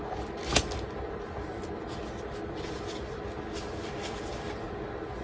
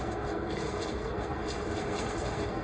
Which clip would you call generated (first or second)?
second